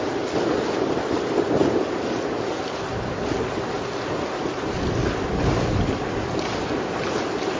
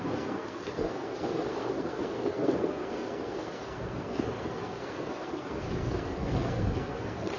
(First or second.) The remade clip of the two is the second